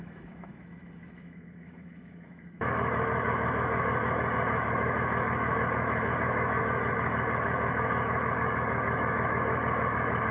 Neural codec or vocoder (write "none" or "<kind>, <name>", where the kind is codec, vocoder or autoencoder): autoencoder, DAC-VAE